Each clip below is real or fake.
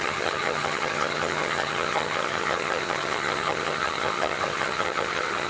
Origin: fake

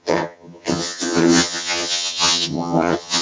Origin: fake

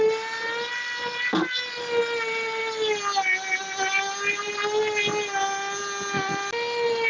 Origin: real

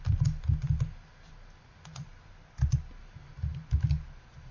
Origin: real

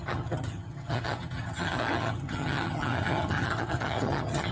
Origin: fake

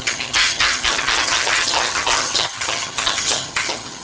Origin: fake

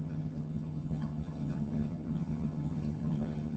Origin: fake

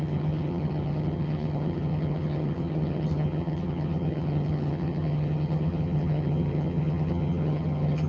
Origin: fake